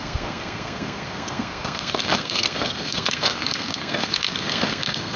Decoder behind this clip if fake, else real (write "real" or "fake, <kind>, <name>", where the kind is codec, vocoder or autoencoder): fake, codec, SNAC